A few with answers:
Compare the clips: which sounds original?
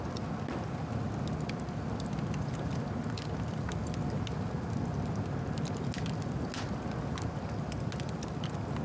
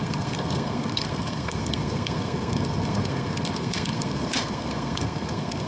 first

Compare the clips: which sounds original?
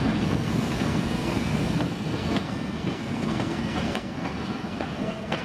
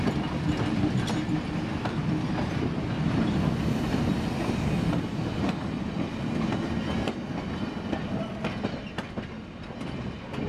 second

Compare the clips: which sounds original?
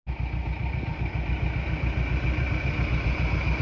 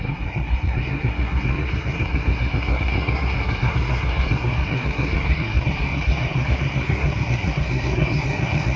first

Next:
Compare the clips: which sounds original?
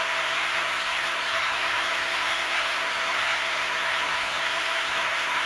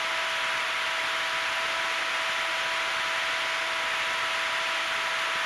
second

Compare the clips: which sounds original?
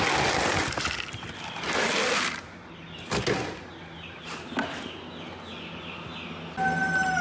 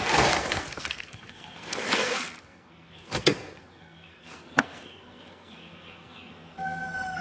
first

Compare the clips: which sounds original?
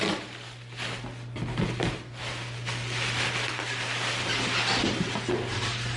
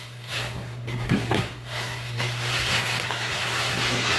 first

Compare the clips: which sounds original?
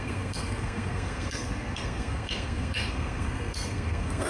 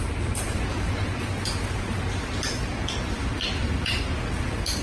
second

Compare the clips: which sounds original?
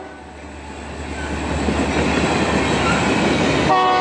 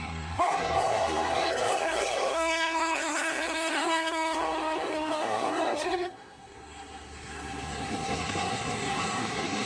first